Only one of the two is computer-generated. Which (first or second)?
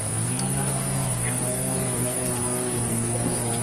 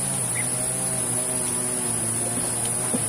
first